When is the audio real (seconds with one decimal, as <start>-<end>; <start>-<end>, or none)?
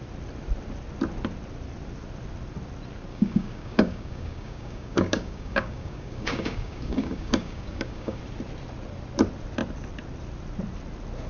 0.0-3.1; 8.2-11.3